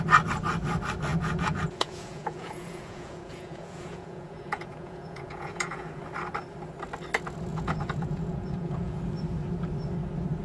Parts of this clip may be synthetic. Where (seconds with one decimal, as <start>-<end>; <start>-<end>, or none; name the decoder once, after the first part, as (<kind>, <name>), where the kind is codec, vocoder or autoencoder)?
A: 1.1-6.0 (vocoder, Vocos); 7.5-9.0

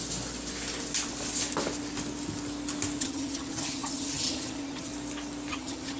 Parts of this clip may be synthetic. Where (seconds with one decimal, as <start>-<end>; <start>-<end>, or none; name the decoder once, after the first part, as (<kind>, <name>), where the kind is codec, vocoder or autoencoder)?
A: 3.0-4.9 (vocoder, HiFi-GAN); 5.5-6.0

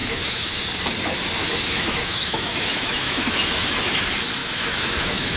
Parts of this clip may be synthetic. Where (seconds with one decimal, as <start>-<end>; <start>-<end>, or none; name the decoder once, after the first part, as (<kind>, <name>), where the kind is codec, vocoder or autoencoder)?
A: 0.0-0.6 (autoencoder, DAC-VAE); 1.4-3.4; 4.4-5.4

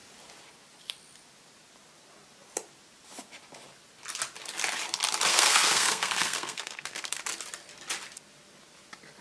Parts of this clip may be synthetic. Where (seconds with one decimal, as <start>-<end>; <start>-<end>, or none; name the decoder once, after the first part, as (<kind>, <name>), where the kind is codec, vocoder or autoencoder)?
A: 5.3-7.2 (codec, SNAC)